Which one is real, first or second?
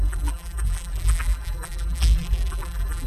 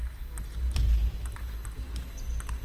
second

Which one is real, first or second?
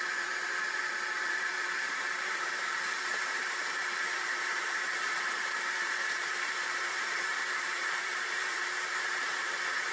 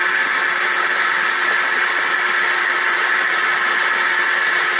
second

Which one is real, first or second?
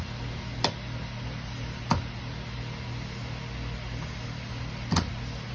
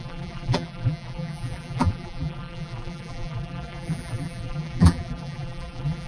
first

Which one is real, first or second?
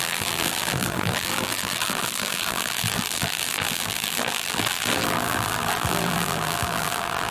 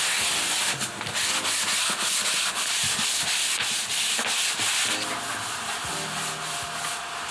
second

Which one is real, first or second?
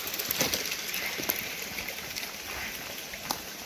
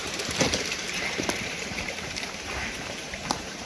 first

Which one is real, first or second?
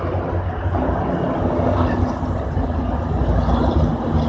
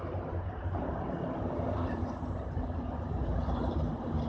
first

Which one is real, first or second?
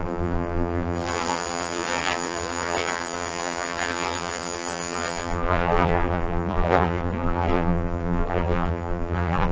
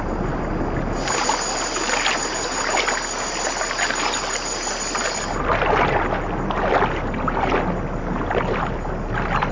second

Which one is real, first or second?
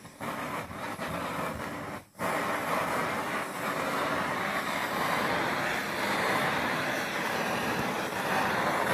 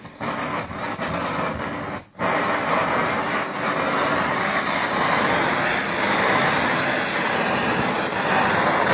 second